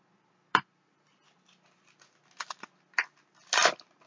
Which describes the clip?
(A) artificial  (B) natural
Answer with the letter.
B